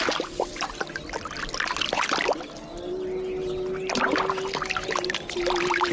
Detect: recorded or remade recorded